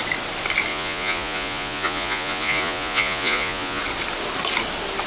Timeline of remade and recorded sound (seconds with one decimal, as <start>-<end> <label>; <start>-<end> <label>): 0.0-0.7 recorded; 0.7-3.8 remade; 3.8-5.1 recorded